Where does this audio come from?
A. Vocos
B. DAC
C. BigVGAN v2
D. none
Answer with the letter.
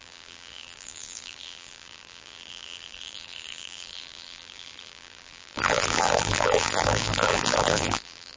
C